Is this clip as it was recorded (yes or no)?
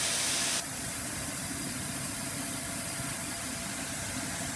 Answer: no